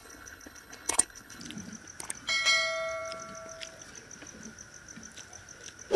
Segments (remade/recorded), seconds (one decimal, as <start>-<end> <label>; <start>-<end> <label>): 0.0-1.4 remade; 1.4-6.0 recorded